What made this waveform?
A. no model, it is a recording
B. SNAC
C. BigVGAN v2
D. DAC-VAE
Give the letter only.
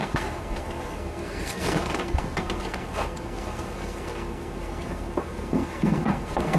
B